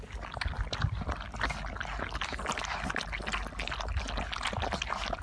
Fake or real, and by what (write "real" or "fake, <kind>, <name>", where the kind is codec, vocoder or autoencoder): real